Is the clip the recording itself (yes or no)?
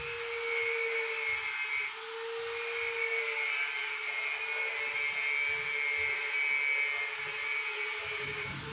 yes